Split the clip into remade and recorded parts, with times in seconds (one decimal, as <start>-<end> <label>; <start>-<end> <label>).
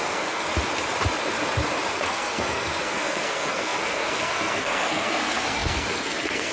0.0-0.5 remade; 0.5-1.9 recorded; 1.9-6.5 remade